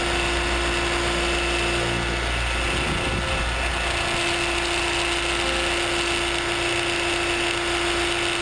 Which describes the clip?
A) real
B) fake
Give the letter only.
A